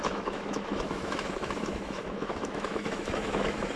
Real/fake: fake